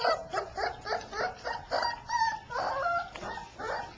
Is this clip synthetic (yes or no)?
no